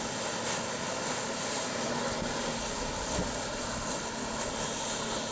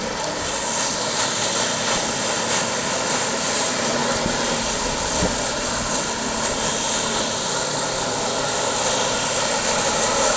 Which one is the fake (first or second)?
second